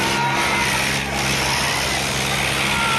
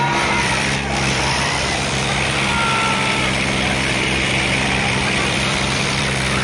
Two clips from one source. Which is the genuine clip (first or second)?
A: first